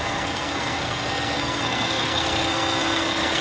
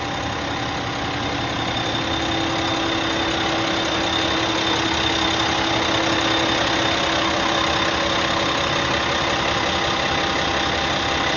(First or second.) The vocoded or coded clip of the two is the first